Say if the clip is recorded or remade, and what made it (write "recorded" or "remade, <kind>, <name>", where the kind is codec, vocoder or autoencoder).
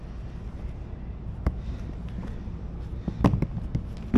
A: recorded